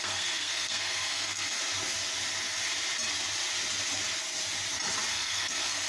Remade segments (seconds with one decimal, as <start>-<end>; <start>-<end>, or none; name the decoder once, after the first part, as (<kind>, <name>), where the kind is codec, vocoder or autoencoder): 0.0-1.6 (codec, SNAC); 5.1-5.9